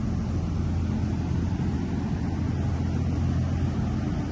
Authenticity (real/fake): real